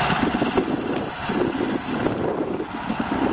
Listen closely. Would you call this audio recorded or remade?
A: recorded